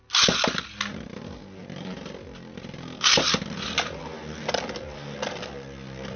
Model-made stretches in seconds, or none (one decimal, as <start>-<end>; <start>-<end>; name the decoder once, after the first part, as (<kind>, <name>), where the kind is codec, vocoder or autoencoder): none